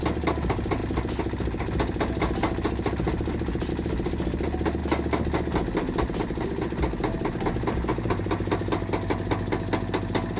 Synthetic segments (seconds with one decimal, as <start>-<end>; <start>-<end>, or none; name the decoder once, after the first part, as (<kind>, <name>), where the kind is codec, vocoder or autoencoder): none

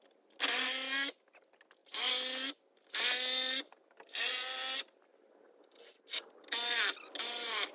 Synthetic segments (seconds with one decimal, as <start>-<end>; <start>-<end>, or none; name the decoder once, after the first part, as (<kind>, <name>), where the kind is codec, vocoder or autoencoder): none

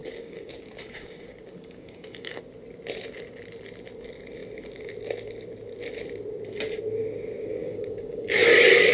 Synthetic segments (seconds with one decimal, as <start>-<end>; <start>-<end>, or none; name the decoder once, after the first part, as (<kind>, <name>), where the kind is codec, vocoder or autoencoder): 0.0-2.4 (codec, DAC); 7.5-8.4

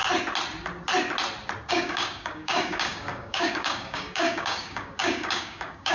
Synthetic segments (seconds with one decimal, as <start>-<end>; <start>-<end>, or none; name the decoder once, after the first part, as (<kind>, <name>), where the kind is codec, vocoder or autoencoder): 1.7-5.9 (codec, DAC)

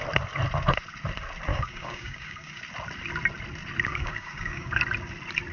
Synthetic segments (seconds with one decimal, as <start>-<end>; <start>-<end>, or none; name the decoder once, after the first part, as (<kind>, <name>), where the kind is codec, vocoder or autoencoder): 1.5-2.6 (codec, DAC); 3.9-4.8

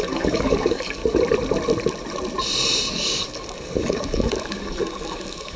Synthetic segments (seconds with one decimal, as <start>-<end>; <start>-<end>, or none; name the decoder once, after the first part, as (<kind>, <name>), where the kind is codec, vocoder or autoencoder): 0.0-1.0 (codec, DAC); 2.9-5.6